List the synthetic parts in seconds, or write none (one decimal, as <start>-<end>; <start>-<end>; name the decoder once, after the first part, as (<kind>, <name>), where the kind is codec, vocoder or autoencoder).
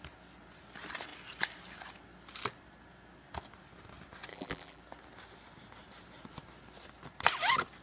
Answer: 4.3-4.8 (vocoder, BigVGAN v2)